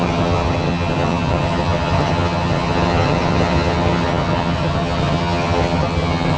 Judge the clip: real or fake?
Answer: fake